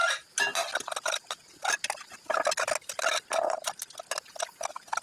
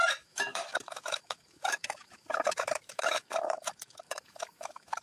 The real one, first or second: first